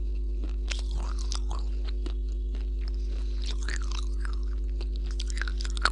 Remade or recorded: recorded